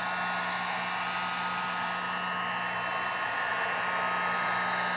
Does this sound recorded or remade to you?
recorded